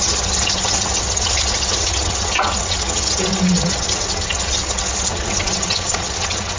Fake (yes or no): yes